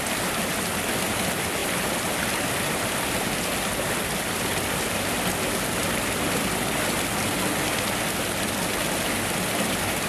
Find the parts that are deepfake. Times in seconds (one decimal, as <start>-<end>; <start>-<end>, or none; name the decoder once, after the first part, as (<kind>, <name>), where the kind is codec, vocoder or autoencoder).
none

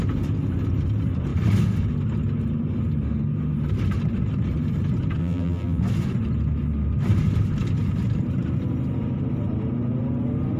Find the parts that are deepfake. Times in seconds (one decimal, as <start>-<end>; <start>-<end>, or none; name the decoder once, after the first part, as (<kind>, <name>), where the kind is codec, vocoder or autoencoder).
5.2-5.8 (vocoder, BigVGAN v2)